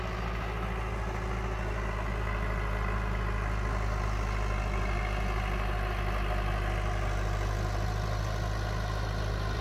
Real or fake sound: real